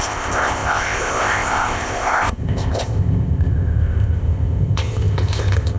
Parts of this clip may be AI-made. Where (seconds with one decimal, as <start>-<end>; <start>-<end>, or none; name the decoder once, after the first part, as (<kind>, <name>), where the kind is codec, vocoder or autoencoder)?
0.0-5.8 (codec, ZipCodec)